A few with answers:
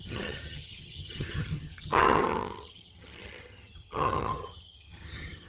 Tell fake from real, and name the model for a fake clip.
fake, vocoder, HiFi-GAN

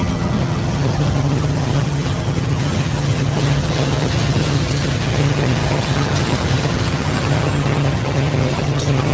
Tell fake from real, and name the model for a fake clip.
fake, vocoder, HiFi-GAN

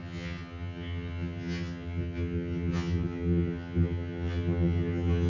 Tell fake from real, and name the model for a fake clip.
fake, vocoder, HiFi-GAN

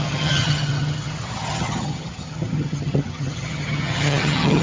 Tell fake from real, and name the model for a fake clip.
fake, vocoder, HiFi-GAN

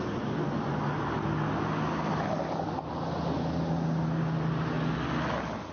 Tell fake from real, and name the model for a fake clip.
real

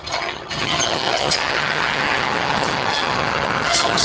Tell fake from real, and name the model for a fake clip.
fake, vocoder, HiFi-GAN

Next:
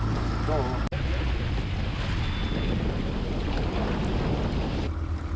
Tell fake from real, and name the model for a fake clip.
real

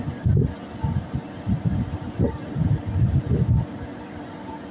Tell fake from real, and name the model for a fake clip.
real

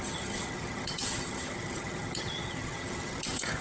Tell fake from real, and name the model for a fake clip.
fake, vocoder, HiFi-GAN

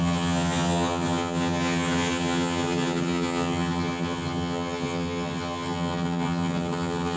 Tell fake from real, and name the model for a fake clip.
fake, vocoder, HiFi-GAN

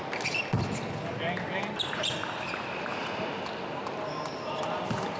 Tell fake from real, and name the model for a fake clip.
real